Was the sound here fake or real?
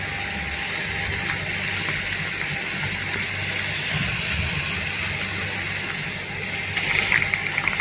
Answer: real